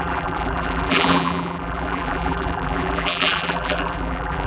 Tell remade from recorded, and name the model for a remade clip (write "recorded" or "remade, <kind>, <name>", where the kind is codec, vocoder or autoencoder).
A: remade, vocoder, BigVGAN v2